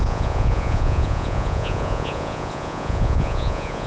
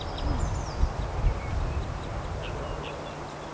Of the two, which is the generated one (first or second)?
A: first